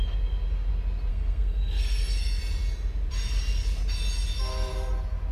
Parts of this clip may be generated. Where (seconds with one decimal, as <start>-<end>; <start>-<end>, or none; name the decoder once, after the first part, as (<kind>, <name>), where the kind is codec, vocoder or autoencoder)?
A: 1.1-2.4 (codec, SNAC)